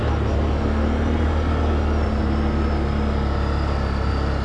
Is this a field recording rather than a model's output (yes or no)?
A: yes